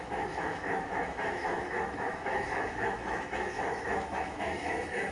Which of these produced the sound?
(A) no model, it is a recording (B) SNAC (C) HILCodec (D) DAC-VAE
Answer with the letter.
D